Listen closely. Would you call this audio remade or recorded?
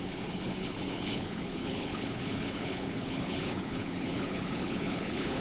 remade